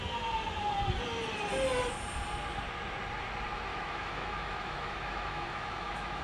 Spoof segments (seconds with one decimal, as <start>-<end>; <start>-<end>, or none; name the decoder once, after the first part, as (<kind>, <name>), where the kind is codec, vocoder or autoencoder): 3.7-6.2 (autoencoder, DAC-VAE)